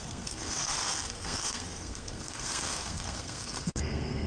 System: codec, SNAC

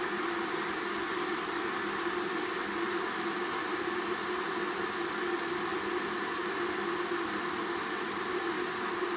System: none